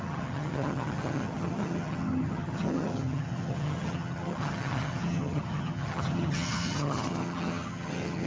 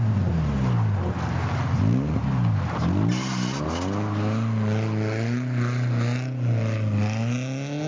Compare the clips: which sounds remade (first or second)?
first